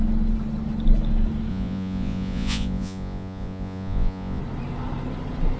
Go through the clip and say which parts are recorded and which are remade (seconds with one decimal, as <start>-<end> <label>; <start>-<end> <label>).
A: 0.0-1.5 recorded; 1.5-4.4 remade; 4.4-5.6 recorded